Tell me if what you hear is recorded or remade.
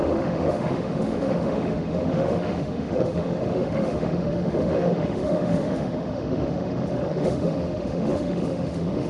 remade